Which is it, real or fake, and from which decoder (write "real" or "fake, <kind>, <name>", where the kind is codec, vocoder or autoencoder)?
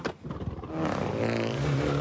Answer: real